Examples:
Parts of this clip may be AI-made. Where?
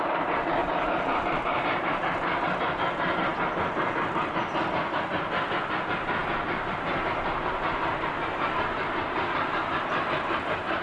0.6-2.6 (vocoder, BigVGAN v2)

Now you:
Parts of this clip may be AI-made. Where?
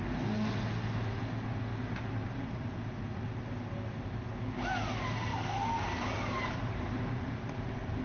1.7-3.4 (vocoder, BigVGAN v2); 5.3-8.0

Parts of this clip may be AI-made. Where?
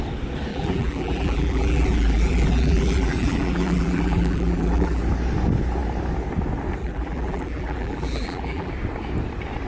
0.5-5.0 (vocoder, BigVGAN v2); 6.8-8.7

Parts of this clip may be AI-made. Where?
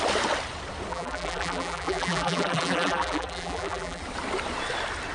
0.9-4.0 (vocoder, BigVGAN v2)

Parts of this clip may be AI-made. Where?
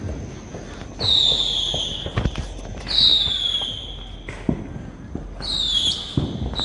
none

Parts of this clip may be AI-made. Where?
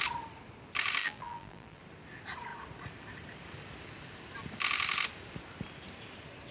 1.0-1.8 (vocoder, BigVGAN v2)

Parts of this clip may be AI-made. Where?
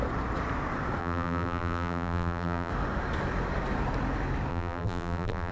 1.0-2.7 (vocoder, BigVGAN v2); 4.5-5.5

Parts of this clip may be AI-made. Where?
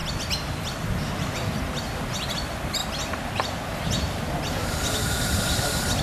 none